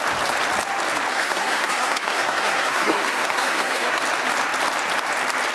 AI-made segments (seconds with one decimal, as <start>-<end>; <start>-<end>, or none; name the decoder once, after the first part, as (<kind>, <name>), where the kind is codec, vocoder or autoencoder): 1.1-4.0 (codec, SNAC)